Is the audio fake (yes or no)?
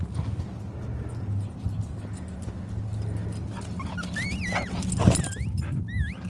no